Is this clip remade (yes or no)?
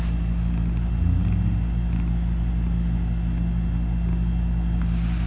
no